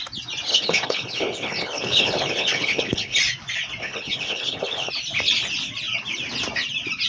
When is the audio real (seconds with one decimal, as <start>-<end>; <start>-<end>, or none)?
0.0-0.5; 3.2-3.8; 4.9-7.1